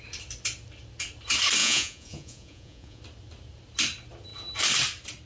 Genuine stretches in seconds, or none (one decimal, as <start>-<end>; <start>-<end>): 0.0-1.6; 3.0-5.3

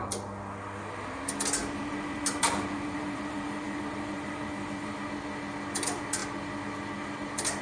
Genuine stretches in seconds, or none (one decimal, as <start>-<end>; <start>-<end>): 0.0-1.6; 5.0-7.6